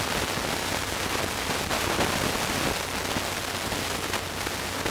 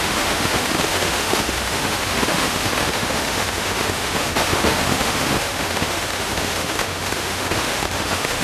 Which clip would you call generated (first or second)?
second